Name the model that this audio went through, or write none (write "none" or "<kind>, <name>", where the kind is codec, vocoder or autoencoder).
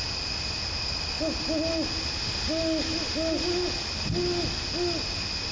none